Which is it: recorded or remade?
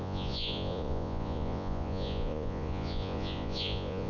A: remade